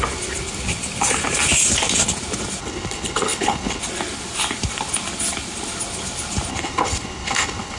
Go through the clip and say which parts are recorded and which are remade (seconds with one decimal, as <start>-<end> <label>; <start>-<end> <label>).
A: 0.0-2.6 recorded; 2.6-3.8 remade; 3.8-6.5 recorded; 6.5-7.8 remade

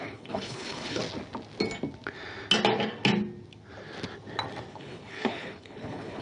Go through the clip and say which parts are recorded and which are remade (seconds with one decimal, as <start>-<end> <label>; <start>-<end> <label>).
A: 0.0-1.0 remade; 1.0-4.7 recorded; 4.7-6.2 remade

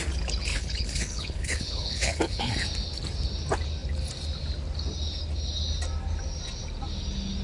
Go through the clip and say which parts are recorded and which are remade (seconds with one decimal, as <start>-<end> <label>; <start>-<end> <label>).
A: 0.0-0.5 recorded; 0.5-2.5 remade; 2.5-7.4 recorded

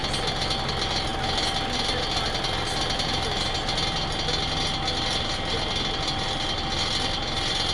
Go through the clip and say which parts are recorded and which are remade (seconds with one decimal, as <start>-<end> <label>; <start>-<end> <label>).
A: 0.0-7.7 recorded

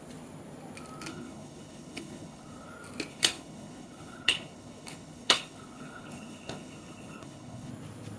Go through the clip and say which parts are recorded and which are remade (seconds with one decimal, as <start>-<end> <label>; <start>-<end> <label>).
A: 0.0-1.1 recorded; 1.1-2.7 remade; 2.7-3.1 recorded; 3.1-7.7 remade; 7.7-8.2 recorded